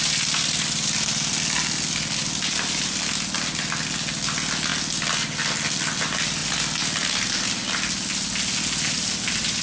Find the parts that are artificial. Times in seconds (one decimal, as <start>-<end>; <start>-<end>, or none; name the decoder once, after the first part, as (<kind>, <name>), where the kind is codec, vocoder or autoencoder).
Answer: none